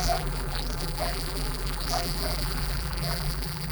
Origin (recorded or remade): remade